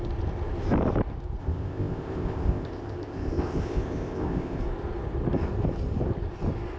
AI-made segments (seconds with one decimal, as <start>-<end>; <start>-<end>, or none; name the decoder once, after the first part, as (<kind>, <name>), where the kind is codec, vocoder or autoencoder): 1.4-4.6 (codec, ZipCodec)